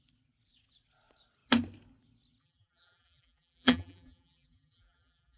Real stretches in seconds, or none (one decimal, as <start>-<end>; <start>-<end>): 0.0-2.4